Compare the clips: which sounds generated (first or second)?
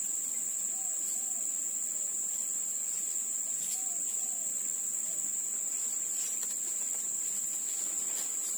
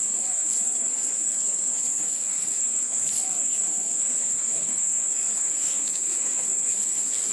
second